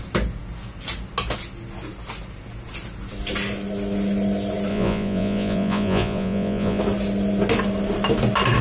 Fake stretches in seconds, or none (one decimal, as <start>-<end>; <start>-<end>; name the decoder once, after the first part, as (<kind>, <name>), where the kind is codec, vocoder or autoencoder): 4.7-6.8 (vocoder, Vocos)

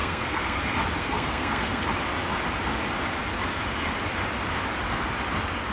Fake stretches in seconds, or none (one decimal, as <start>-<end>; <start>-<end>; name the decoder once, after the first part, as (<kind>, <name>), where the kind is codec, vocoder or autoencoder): 0.0-0.6 (codec, SNAC); 1.0-1.8

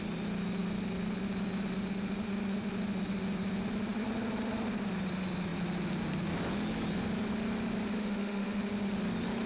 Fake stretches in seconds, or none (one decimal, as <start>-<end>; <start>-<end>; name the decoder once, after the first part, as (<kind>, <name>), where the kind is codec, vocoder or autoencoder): 7.9-8.6 (autoencoder, DAC-VAE)

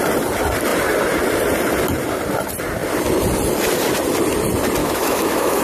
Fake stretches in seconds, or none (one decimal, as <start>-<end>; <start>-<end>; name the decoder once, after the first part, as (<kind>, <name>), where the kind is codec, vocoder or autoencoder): 4.8-5.6 (autoencoder, DAC-VAE)

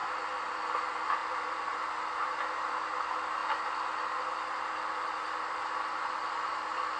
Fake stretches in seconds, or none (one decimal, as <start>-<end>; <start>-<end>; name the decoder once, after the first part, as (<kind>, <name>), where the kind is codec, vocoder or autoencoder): 1.2-1.7 (vocoder, BigVGAN v2)

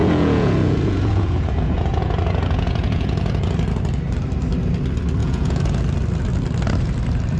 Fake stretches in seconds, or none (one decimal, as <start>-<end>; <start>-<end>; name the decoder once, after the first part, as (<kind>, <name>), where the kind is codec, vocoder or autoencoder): 0.0-3.5 (vocoder, Vocos); 5.2-5.8

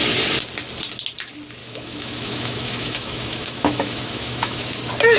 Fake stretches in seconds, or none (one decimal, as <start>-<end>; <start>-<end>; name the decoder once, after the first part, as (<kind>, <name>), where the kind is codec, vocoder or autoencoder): 1.6-4.7 (autoencoder, DAC-VAE)